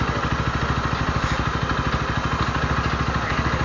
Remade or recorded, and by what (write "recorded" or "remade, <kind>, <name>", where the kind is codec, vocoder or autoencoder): recorded